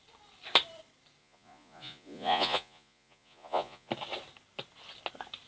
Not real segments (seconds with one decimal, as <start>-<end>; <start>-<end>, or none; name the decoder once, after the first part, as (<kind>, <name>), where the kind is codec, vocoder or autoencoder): 1.2-3.9 (vocoder, Vocos)